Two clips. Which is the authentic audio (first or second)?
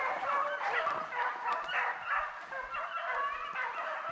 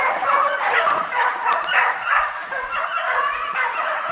first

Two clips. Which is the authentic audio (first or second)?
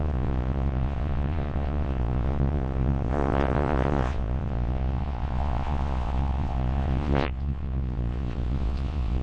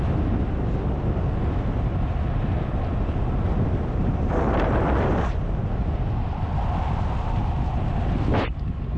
second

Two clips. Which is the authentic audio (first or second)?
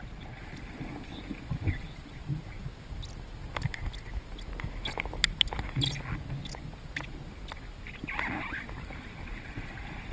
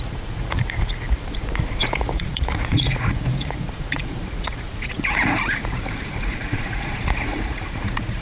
first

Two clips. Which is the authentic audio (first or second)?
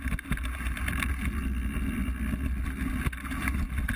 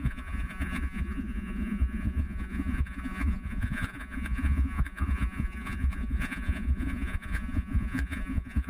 first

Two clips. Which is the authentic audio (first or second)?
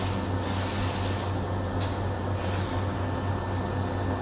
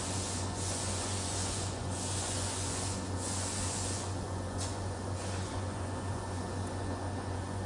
first